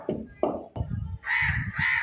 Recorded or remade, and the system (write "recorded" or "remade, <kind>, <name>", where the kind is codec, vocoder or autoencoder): recorded